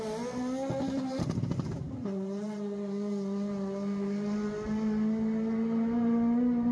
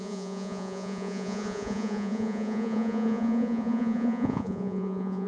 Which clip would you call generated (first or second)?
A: second